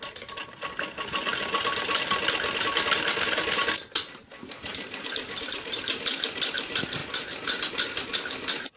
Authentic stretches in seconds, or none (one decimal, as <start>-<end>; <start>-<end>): 0.0-7.0; 7.6-8.8